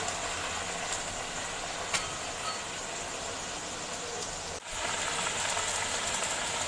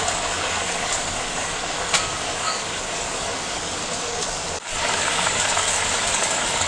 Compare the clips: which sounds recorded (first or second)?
first